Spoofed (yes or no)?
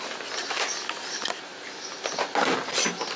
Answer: no